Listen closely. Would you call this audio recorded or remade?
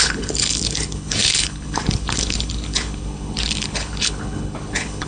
remade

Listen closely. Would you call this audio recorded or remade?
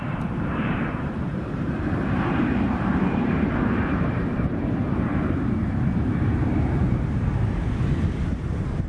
remade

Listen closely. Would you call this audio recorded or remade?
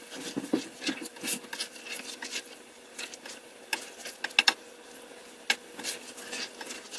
recorded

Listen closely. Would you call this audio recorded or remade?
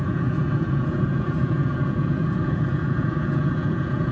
remade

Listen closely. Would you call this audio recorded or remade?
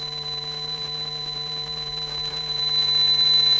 remade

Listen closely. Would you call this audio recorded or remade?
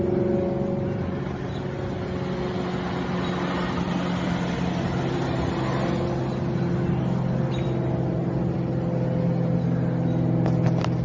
recorded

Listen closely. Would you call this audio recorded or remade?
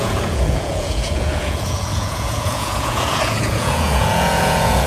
remade